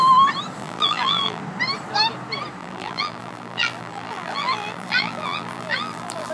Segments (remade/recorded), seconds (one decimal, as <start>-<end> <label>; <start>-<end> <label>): 0.0-0.6 recorded; 0.6-1.4 remade; 1.4-2.6 recorded; 2.6-6.3 remade